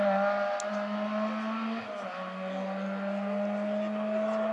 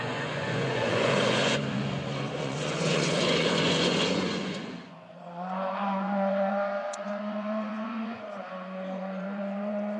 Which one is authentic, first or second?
first